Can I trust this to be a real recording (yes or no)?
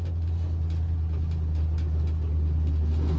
yes